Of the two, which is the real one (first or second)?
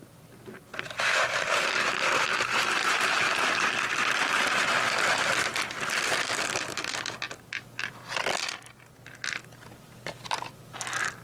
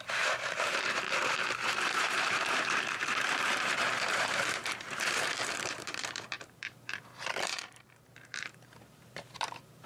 first